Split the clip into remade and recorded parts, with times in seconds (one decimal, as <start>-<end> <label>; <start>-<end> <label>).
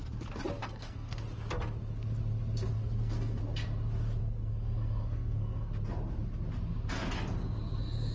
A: 0.0-0.6 recorded; 0.6-1.2 remade; 1.2-2.7 recorded; 2.7-3.4 remade; 3.4-4.2 recorded; 4.2-5.7 remade; 5.7-8.1 recorded